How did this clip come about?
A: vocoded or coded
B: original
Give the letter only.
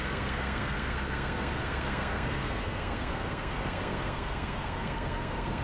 A